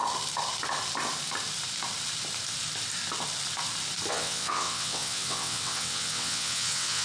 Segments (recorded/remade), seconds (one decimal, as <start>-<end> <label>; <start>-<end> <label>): 0.0-4.1 recorded; 4.1-7.0 remade

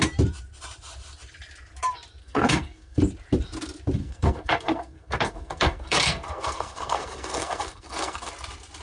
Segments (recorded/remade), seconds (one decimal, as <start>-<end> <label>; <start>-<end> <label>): 0.0-2.2 recorded; 2.2-3.0 remade; 3.0-4.0 recorded; 4.0-8.3 remade; 8.3-8.8 recorded

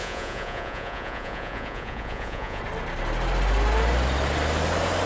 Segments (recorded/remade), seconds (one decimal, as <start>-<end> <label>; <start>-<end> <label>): 0.0-2.6 remade; 2.6-5.1 recorded

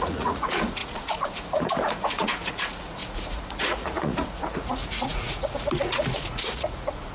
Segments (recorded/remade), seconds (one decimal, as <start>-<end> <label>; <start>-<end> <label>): 0.0-7.1 remade

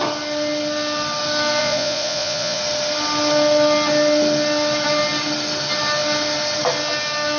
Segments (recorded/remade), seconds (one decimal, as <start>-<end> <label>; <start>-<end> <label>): 0.0-1.6 recorded; 1.6-2.6 remade; 2.6-7.4 recorded